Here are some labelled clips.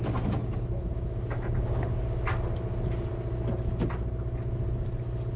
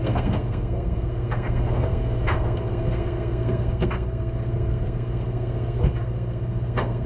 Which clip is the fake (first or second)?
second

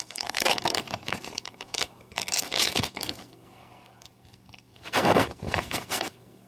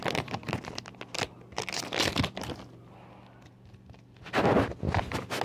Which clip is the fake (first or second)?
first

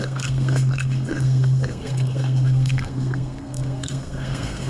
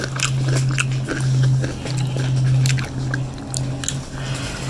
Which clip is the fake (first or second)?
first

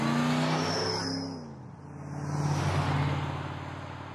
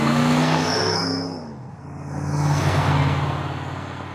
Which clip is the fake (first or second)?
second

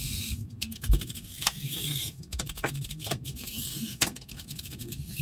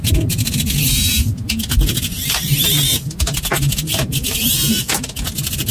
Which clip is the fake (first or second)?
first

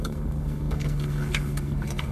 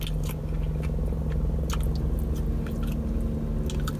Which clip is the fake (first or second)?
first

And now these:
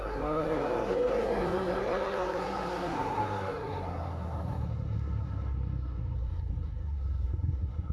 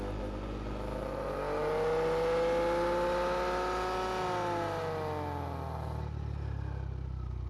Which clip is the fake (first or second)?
first